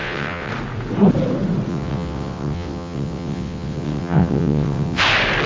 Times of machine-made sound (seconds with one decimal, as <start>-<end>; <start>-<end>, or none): 0.0-0.5; 1.7-5.0